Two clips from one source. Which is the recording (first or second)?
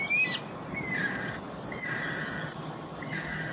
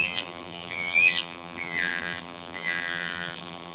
first